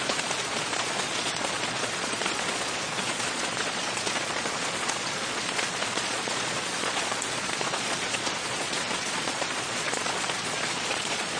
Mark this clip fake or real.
fake